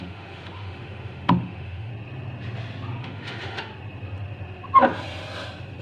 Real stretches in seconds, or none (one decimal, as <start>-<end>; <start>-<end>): 1.9-3.0; 3.7-5.8